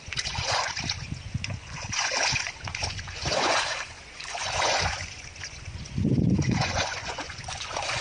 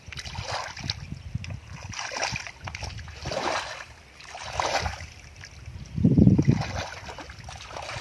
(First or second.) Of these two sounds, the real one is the second